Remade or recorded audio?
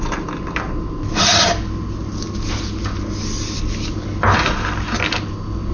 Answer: recorded